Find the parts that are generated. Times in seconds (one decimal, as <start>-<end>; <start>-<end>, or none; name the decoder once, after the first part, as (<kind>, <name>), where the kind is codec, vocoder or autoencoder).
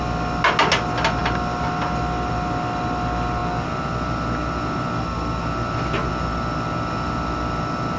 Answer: none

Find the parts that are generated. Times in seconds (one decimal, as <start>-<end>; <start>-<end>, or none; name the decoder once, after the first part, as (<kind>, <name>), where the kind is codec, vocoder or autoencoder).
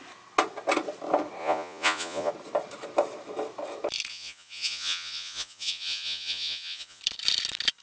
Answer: 1.4-2.3 (vocoder, Vocos); 4.1-7.0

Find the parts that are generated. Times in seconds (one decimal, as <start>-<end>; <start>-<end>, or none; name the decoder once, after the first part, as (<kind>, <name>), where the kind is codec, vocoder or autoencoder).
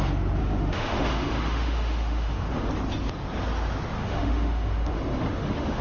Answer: 0.4-2.7 (autoencoder, DAC-VAE); 4.0-5.8